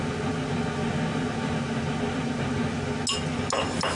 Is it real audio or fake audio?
real